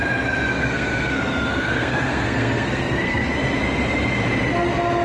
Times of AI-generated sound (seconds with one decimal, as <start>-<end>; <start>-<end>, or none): 0.5-3.3